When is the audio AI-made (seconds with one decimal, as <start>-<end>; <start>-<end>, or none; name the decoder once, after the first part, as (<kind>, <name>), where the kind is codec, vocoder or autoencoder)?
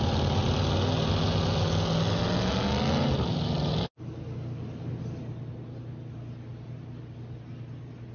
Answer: none